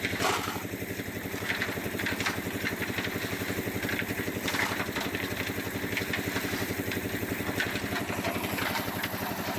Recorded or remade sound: remade